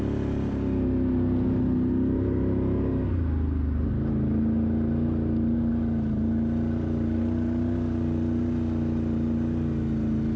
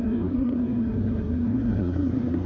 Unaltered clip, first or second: first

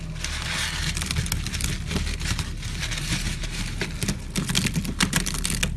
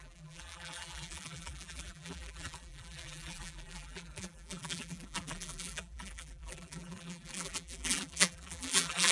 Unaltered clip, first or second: first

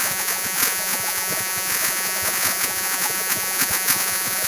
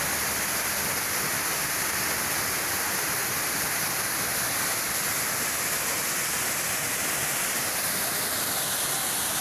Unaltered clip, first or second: second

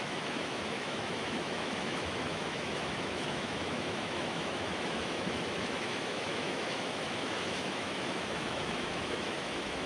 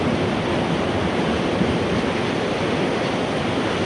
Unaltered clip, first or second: second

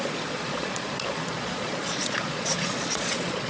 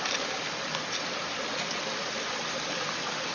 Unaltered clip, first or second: second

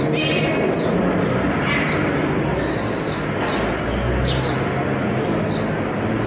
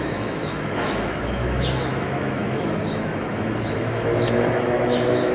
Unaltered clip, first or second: first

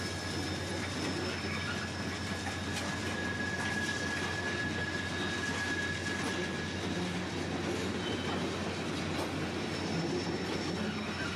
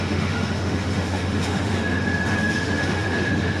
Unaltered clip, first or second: first